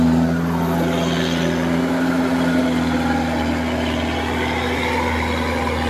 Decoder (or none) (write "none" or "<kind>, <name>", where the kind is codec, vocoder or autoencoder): none